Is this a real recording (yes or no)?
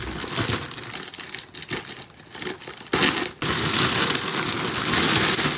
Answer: yes